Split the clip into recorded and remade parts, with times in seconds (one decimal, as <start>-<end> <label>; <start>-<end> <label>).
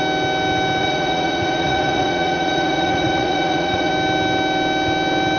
0.0-0.8 recorded; 0.8-3.9 remade; 3.9-5.4 recorded